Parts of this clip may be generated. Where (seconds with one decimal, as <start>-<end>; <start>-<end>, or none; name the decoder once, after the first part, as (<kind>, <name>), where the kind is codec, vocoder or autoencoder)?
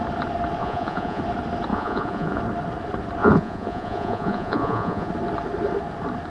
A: 0.6-1.2 (vocoder, Vocos); 1.7-2.4; 3.2-5.1